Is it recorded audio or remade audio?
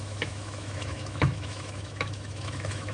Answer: remade